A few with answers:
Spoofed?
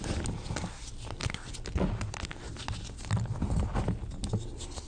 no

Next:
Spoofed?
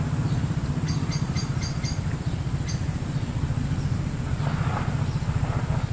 no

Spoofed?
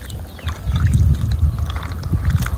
no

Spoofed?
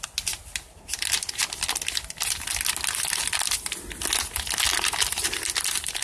no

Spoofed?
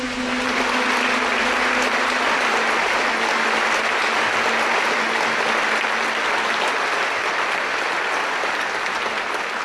no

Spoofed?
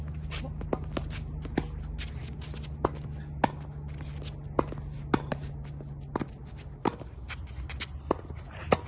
no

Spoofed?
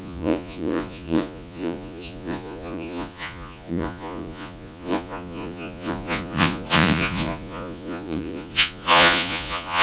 yes